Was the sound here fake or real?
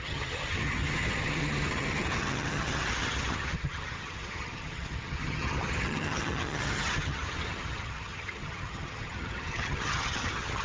fake